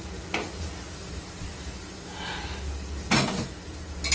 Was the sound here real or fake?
real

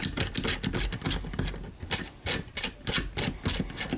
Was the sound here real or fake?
real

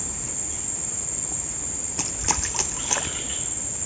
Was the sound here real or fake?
real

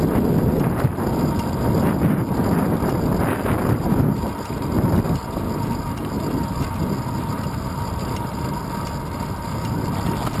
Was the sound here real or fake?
real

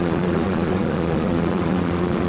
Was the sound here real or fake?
fake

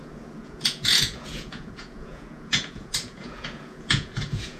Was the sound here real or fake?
fake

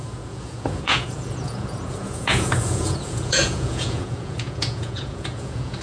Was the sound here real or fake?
fake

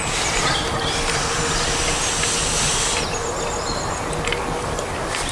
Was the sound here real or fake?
real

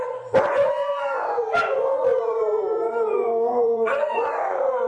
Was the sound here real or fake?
fake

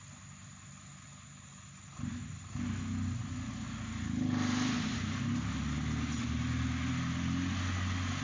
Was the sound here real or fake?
real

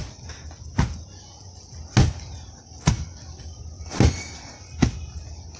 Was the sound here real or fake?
real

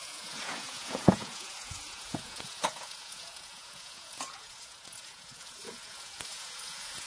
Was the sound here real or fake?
fake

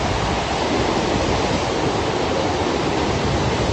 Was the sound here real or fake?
real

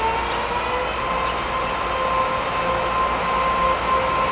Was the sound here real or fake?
real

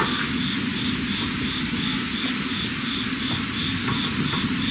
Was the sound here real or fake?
real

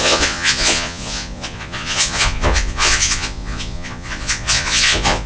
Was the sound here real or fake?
fake